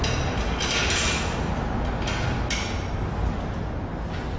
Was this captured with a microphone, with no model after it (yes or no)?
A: yes